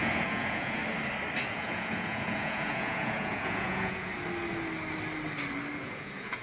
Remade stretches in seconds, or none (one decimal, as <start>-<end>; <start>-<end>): 0.0-0.8; 1.5-4.1; 5.8-6.4